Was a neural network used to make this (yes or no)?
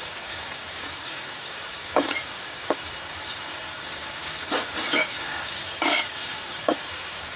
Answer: yes